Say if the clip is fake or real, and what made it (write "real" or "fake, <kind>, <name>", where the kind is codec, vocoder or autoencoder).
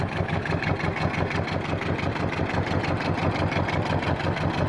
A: real